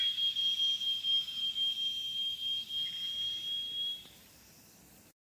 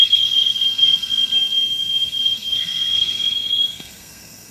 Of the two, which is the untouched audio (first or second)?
first